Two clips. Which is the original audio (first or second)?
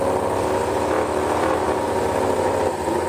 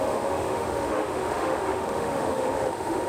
first